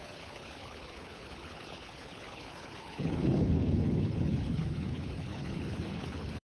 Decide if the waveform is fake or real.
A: fake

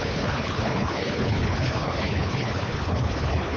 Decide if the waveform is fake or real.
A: fake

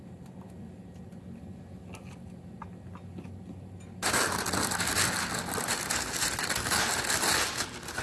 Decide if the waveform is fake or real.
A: real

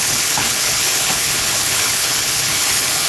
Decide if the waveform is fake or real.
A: fake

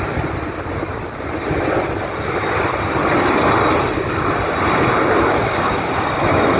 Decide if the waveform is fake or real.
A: real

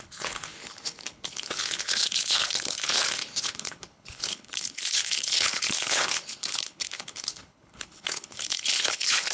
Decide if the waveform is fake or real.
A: fake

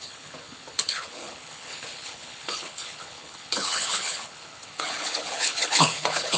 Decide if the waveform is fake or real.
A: fake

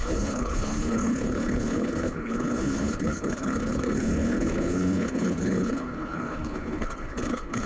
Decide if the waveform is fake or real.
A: fake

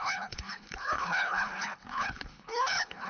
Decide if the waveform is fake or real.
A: fake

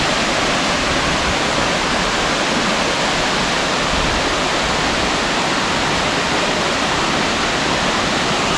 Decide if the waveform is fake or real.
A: real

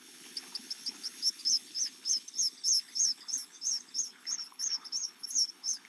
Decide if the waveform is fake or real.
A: fake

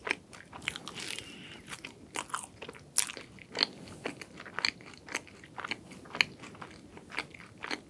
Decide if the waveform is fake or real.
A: real